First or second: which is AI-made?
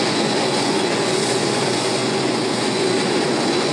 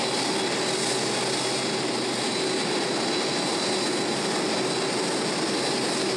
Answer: first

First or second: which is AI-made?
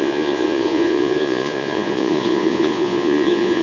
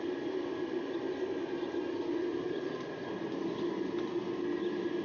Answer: first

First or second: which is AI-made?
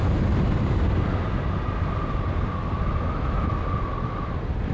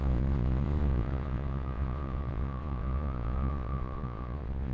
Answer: second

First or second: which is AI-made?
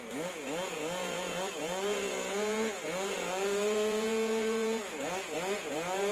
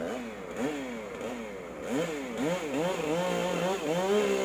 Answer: first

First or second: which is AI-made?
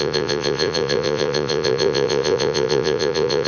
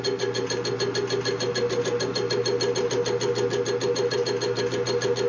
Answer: first